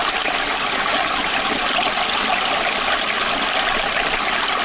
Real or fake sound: real